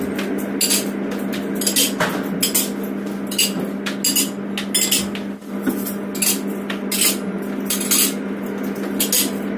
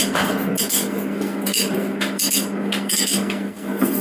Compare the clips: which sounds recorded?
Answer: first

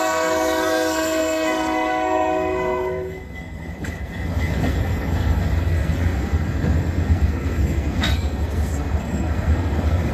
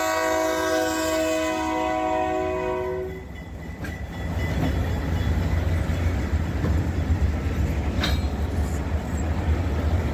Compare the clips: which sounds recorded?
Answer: second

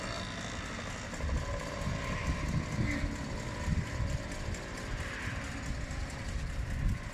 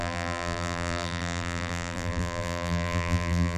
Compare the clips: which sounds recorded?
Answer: first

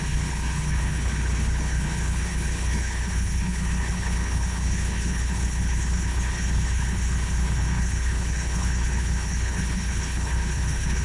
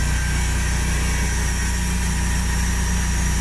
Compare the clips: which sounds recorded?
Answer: second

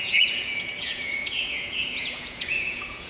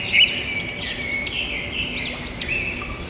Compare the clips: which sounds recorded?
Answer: second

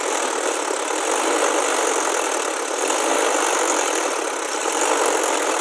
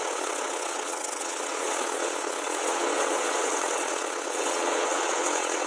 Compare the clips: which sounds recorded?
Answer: first